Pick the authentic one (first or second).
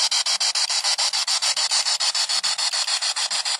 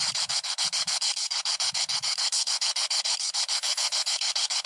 first